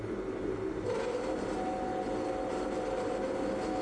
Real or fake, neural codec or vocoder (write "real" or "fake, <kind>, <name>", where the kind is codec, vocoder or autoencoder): real